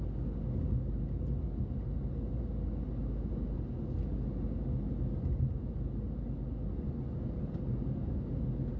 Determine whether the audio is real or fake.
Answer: real